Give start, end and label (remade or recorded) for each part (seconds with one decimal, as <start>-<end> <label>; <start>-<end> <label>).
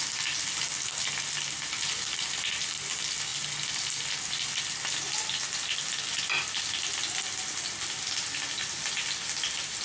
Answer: 0.0-9.8 recorded